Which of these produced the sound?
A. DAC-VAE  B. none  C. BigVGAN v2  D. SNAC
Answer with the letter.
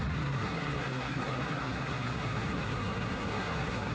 D